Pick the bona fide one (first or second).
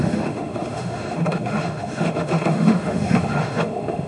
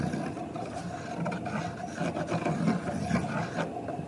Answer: second